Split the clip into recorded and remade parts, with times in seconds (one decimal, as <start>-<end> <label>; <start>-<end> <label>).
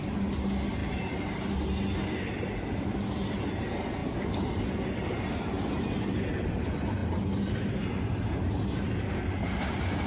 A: 0.0-0.8 recorded; 0.8-1.4 remade; 1.4-10.1 recorded